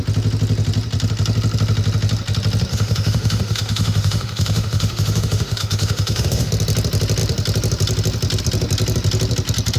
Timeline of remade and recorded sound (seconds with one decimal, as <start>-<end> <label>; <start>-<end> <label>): 0.0-2.7 recorded; 2.7-6.5 remade; 6.5-9.8 recorded